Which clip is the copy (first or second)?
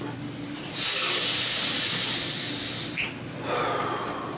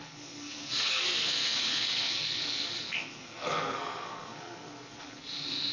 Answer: second